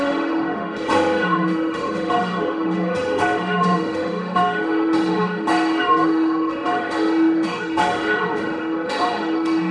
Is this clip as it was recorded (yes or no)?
no